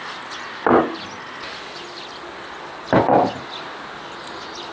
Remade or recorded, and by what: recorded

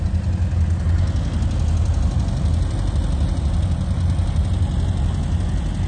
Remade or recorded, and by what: recorded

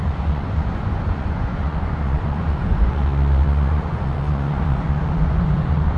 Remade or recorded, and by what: remade, vocoder, Vocos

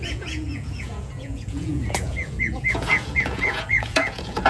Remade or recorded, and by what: remade, vocoder, Vocos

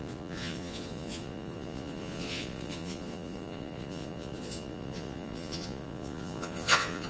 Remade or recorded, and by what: remade, vocoder, Vocos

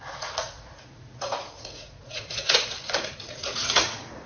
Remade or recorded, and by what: remade, vocoder, Vocos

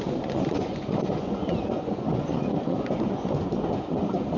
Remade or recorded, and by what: remade, vocoder, Vocos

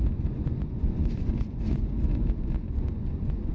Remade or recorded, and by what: remade, vocoder, Vocos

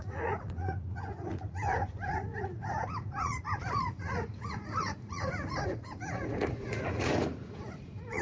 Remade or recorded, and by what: remade, vocoder, Vocos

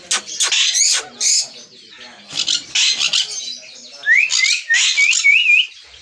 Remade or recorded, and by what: recorded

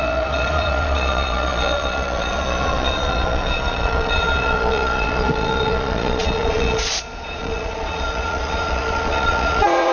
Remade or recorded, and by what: remade, vocoder, Vocos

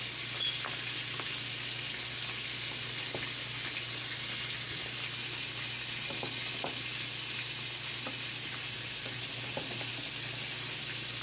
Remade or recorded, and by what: recorded